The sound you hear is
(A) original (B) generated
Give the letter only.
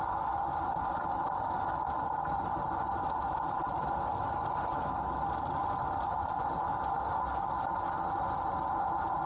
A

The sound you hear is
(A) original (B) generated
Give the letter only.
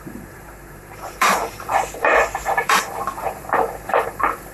B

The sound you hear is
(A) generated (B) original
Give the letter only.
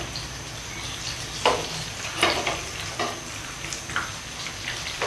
B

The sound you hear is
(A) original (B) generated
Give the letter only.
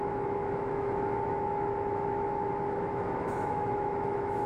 B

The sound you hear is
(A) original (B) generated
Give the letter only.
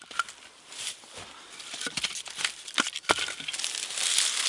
A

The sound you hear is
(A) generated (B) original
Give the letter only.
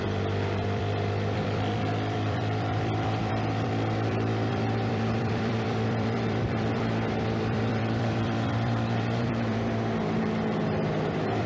A